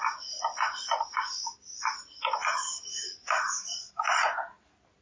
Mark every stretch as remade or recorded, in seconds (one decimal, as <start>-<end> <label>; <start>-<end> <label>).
0.0-2.4 recorded; 2.4-3.0 remade; 3.0-5.0 recorded